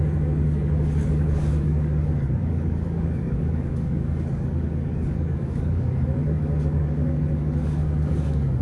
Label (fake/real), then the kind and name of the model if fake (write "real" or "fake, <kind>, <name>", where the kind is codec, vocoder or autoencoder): fake, codec, DAC